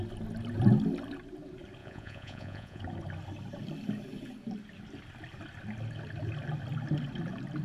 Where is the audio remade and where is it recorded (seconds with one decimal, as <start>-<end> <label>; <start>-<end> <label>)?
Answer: 0.0-1.8 recorded; 1.8-2.8 remade; 2.8-7.6 recorded